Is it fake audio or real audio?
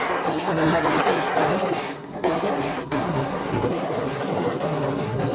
fake